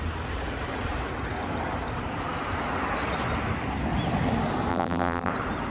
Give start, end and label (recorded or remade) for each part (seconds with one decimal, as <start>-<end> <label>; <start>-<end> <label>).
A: 0.0-4.7 recorded; 4.7-5.3 remade; 5.3-5.7 recorded